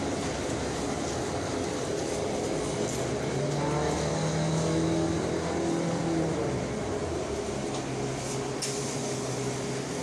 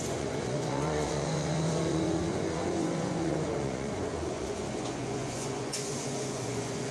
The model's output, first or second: second